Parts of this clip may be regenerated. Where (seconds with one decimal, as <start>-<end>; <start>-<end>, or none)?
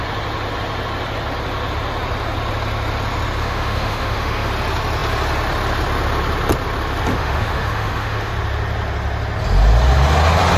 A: 3.4-4.5; 7.1-8.3